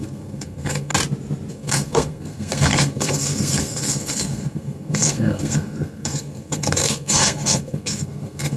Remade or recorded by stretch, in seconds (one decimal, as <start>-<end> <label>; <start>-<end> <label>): 0.0-0.9 remade; 0.9-1.5 recorded; 1.5-8.6 remade